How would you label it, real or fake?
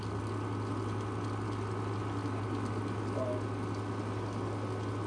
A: real